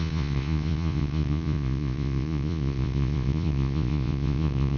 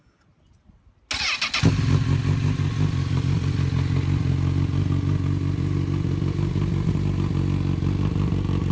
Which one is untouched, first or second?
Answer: second